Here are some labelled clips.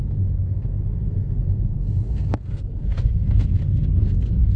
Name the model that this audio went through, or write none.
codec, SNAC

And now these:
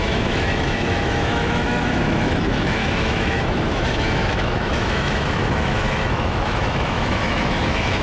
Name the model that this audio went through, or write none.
autoencoder, DAC-VAE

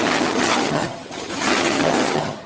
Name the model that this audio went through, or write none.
vocoder, HiFi-GAN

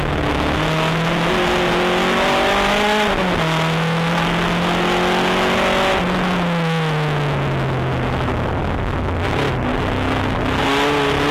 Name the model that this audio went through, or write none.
none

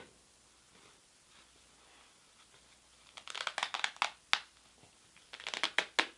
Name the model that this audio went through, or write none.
none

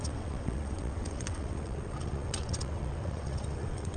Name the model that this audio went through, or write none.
vocoder, WaveNeXt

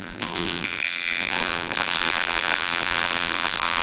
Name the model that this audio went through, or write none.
vocoder, BigVGAN v2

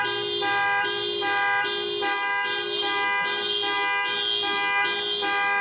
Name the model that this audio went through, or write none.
none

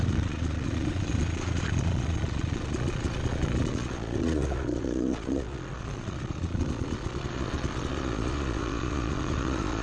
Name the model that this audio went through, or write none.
vocoder, Vocos